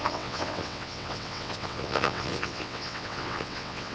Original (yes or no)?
no